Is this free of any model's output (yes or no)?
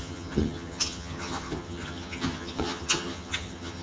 no